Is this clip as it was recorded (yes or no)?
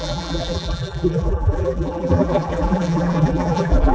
no